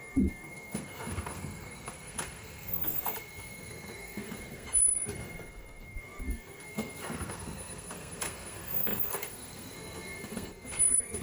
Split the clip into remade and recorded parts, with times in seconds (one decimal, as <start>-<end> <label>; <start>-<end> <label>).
0.0-11.2 remade